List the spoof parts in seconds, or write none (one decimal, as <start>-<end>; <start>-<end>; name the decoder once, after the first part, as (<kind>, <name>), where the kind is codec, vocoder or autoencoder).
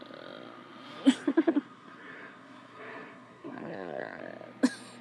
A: 1.3-4.2 (codec, SNAC)